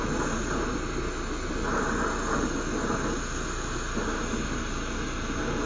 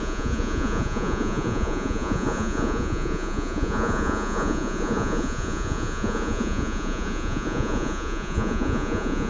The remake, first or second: second